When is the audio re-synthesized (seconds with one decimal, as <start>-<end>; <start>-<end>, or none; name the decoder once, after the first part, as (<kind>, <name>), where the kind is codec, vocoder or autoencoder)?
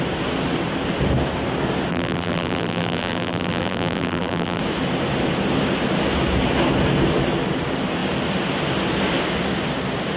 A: 1.9-4.6 (vocoder, BigVGAN v2)